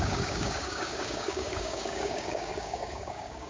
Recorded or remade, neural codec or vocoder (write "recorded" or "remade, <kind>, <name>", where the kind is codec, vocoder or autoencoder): remade, codec, DAC